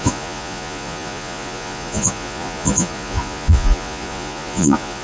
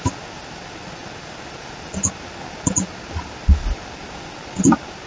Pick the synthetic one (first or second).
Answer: first